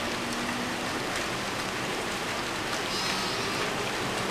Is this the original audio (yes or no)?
yes